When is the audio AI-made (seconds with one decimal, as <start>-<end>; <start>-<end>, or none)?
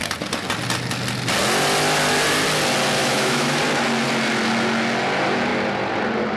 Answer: 3.0-3.6